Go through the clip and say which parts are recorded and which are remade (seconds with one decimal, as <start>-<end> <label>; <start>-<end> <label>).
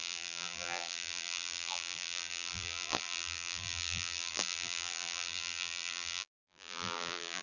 0.0-7.4 remade